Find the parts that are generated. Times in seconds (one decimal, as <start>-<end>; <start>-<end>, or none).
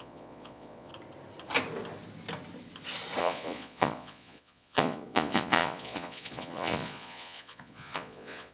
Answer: 0.0-0.9; 3.2-8.5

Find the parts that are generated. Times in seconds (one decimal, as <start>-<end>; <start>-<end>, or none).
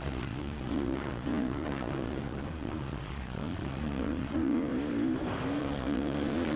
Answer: 0.0-4.7; 5.6-6.6